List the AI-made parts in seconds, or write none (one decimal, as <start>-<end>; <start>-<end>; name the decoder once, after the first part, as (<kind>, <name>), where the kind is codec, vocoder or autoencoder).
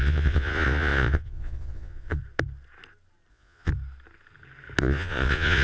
0.0-2.2 (vocoder, Vocos); 3.3-3.7; 4.8-5.6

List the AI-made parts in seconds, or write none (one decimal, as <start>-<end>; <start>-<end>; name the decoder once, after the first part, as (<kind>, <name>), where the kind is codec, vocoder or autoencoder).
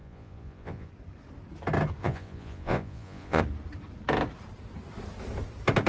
0.0-0.9 (vocoder, Vocos); 2.0-3.4